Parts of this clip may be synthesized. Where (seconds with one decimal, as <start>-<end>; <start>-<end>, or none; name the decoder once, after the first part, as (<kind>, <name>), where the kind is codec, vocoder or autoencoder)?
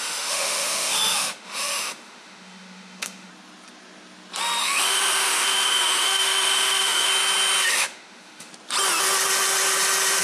0.0-3.3 (autoencoder, DAC-VAE); 4.6-7.1; 7.7-8.5